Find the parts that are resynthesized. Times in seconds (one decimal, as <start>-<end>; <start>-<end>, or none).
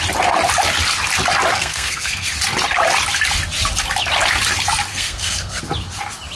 1.5-2.3; 4.9-5.6